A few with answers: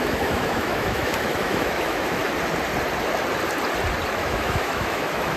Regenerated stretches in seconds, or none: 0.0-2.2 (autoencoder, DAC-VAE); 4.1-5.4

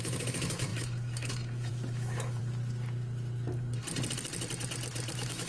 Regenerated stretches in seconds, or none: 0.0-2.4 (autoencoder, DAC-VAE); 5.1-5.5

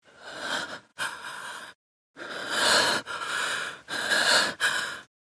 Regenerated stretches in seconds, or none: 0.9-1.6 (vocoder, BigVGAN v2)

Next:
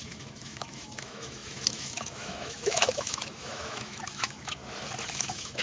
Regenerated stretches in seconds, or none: 0.0-4.6 (autoencoder, DAC-VAE); 5.1-5.6

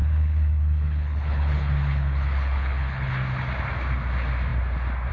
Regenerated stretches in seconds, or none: 0.0-3.1 (codec, HILCodec)